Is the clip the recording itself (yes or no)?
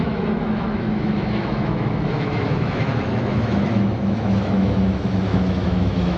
no